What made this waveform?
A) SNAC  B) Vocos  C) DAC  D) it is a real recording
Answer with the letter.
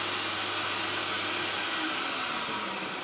D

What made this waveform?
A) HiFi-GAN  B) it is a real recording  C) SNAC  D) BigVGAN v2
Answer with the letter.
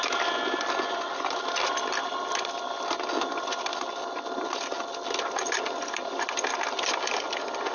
B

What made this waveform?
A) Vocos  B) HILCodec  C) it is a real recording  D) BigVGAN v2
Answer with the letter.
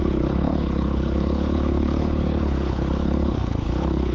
B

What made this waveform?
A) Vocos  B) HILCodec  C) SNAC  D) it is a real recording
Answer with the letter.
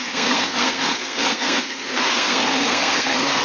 C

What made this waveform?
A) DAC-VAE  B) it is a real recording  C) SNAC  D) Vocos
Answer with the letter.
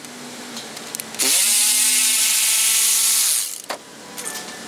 B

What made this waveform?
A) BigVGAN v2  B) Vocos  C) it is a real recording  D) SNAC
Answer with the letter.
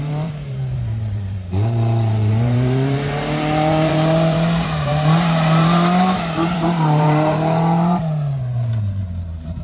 A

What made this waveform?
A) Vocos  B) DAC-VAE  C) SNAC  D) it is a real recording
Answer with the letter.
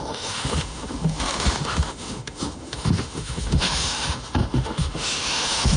B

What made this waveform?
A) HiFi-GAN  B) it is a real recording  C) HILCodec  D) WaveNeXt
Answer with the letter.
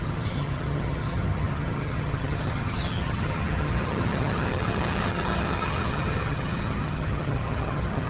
A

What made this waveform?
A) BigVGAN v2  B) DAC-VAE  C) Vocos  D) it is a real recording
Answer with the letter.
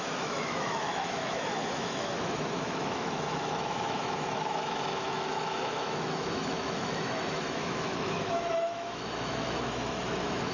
B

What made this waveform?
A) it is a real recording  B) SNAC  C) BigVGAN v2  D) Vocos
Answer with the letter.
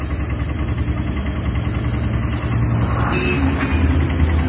A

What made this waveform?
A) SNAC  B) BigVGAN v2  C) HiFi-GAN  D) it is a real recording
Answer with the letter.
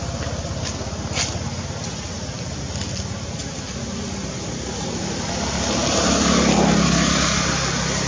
D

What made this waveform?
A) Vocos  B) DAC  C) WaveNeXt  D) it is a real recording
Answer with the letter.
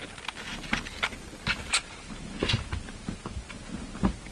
D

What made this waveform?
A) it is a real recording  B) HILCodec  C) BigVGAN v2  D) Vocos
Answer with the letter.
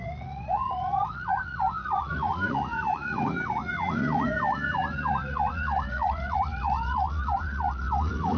D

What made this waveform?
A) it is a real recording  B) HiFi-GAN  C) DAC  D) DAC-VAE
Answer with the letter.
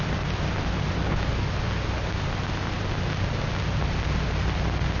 A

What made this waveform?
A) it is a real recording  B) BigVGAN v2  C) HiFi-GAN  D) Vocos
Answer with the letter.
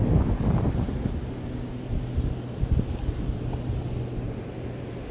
A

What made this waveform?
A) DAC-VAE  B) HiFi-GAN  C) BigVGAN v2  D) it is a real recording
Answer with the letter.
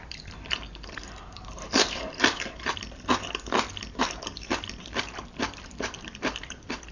C